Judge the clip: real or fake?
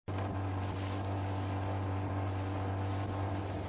real